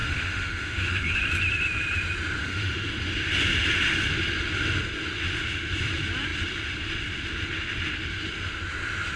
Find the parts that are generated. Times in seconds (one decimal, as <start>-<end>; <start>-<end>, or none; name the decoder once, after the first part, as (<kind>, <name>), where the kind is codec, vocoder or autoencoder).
0.0-1.2 (autoencoder, DAC-VAE); 2.4-2.9